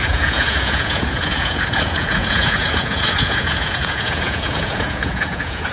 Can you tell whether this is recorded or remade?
remade